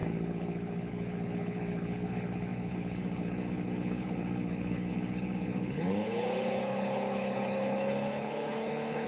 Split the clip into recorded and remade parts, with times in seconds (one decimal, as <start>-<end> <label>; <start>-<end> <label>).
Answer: 0.0-9.1 remade